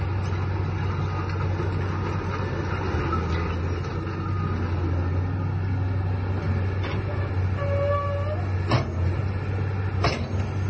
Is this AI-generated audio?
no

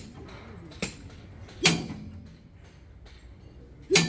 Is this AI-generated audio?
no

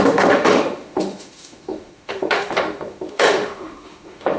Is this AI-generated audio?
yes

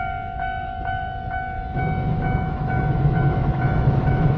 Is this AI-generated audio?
yes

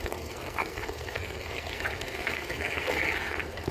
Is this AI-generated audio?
yes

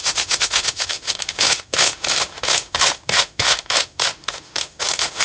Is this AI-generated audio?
yes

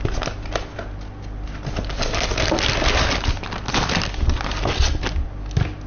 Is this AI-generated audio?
no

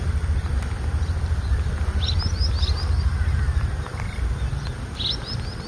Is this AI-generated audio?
no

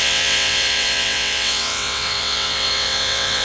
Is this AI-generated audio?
yes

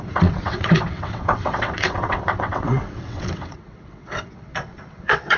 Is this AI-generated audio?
yes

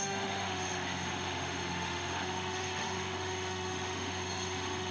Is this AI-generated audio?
yes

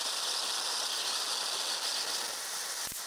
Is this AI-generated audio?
no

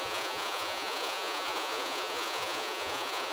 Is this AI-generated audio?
yes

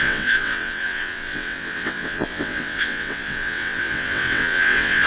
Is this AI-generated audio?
yes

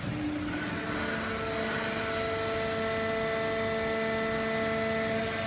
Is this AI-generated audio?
no